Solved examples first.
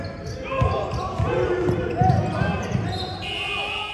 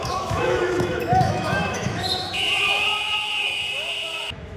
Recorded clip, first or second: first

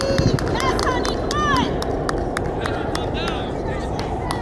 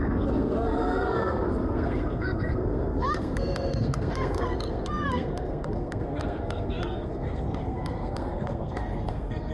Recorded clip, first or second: first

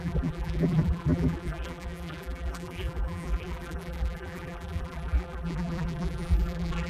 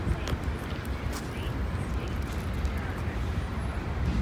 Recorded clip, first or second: second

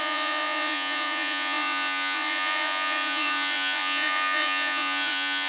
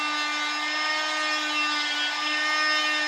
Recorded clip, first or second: second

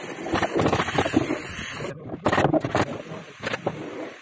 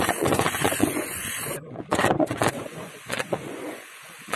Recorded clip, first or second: first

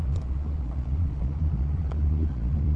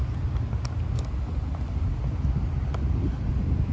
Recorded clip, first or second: second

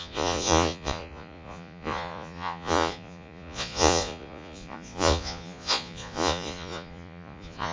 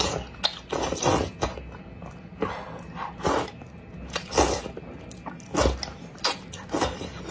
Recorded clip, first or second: second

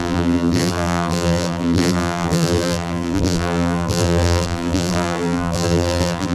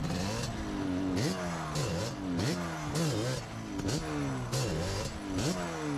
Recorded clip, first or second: second